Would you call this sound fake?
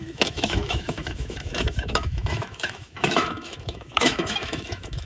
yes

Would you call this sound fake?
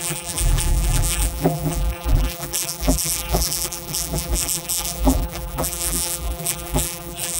yes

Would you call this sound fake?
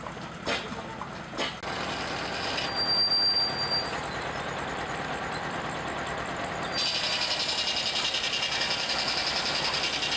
no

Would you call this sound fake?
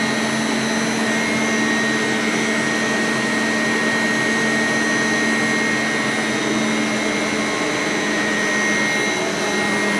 no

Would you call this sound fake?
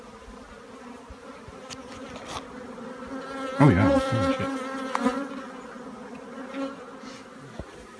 no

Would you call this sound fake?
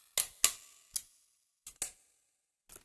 no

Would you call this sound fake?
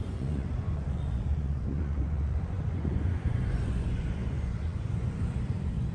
yes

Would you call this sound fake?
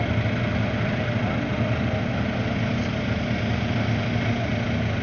no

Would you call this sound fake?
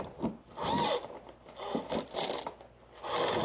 no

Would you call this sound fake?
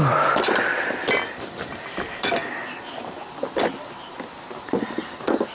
no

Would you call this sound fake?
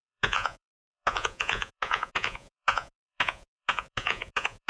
yes